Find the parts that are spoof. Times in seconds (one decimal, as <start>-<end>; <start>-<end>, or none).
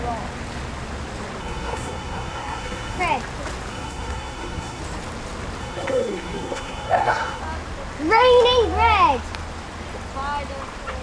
1.4-3.0; 3.7-4.8; 5.6-7.4